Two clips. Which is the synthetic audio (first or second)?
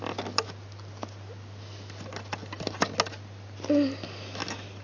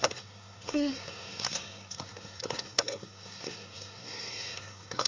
second